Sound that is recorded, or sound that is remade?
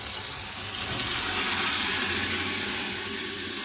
recorded